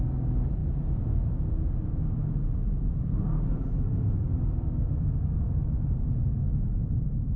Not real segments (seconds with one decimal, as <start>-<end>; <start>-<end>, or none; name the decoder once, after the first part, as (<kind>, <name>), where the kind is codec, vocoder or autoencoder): 0.0-7.4 (vocoder, BigVGAN v2)